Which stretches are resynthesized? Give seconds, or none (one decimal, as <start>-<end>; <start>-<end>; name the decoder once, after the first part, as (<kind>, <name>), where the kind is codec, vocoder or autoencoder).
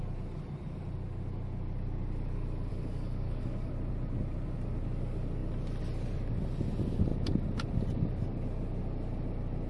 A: 2.7-3.7 (codec, DAC)